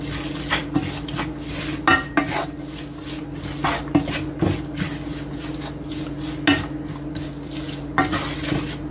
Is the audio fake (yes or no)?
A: no